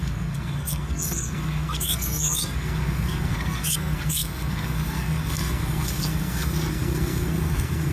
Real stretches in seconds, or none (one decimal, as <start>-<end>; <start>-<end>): none